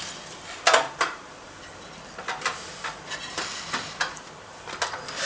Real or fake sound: fake